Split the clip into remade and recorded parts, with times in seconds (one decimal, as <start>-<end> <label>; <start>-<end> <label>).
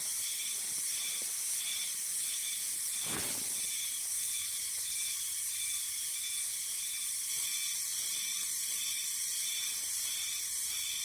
0.0-7.9 recorded; 7.9-10.4 remade; 10.4-11.0 recorded